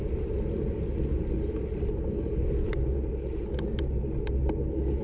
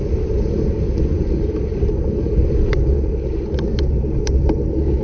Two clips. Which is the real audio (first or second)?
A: first